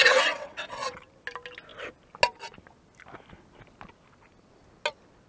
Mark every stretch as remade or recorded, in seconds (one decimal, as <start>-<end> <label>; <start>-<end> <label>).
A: 0.0-1.0 remade; 1.0-5.3 recorded

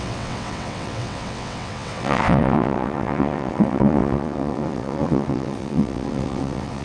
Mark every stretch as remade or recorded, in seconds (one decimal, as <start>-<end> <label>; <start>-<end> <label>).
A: 0.0-6.8 remade

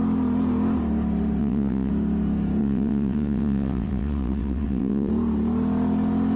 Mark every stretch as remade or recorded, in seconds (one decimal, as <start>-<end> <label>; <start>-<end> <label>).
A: 0.0-1.4 recorded; 1.4-1.9 remade; 1.9-2.6 recorded; 2.6-5.1 remade; 5.1-6.4 recorded